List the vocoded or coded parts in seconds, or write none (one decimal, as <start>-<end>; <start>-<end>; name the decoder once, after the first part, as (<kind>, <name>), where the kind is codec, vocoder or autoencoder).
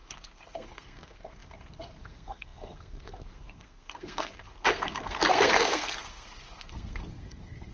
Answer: 0.0-7.7 (codec, SNAC)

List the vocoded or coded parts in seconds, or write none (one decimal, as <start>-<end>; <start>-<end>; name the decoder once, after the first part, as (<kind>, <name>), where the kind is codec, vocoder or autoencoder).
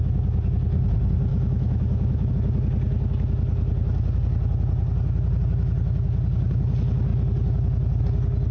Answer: 1.3-2.3 (autoencoder, DAC-VAE)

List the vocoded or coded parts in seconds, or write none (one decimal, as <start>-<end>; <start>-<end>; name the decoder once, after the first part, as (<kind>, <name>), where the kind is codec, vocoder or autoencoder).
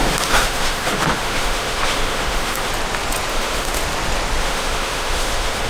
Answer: 0.0-2.7 (autoencoder, DAC-VAE); 3.3-3.8; 4.4-5.7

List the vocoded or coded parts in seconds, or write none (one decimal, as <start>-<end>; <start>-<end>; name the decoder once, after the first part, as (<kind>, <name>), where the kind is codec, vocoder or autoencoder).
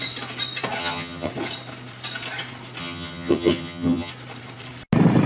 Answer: 0.8-1.3 (vocoder, HiFi-GAN); 2.8-4.1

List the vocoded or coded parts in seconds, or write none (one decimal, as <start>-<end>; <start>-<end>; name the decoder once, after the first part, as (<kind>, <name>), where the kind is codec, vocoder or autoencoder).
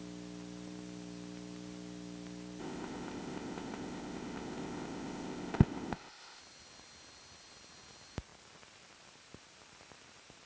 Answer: 2.6-6.4 (codec, ZipCodec)